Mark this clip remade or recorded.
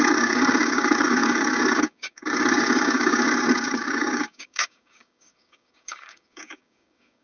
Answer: remade